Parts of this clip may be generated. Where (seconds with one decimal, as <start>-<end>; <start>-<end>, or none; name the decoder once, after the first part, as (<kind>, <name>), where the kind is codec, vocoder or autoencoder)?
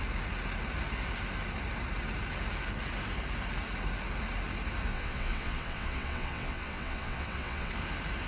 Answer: 4.9-7.7 (vocoder, WaveNeXt)